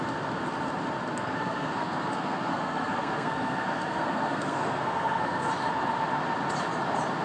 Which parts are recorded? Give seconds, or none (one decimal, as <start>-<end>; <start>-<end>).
0.0-1.2; 5.5-7.2